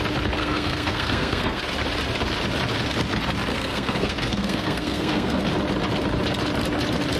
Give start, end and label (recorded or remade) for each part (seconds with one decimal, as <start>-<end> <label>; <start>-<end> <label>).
0.0-0.4 recorded; 0.4-1.6 remade; 1.6-3.5 recorded; 3.5-5.4 remade; 5.4-7.2 recorded